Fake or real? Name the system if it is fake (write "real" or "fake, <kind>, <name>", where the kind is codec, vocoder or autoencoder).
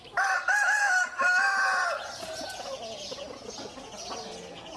real